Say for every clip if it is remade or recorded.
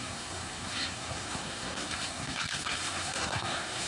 remade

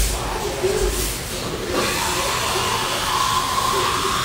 recorded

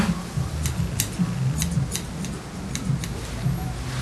recorded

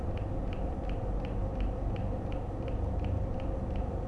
recorded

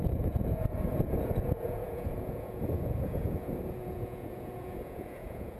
remade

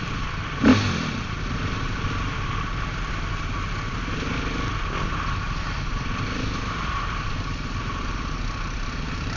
remade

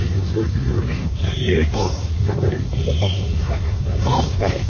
remade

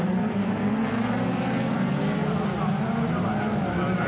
recorded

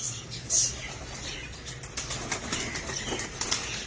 recorded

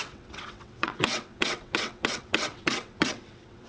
remade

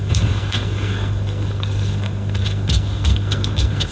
remade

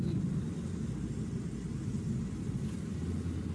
recorded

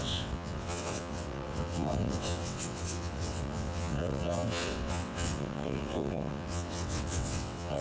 remade